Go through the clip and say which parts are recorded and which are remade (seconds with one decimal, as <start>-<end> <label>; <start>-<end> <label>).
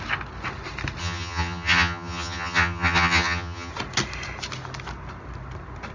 0.0-1.0 recorded; 1.0-3.7 remade; 3.7-5.9 recorded